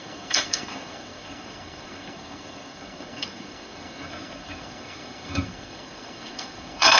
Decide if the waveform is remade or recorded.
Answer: remade